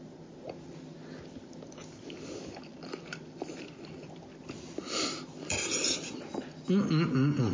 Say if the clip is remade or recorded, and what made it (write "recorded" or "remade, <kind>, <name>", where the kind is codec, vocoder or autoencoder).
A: recorded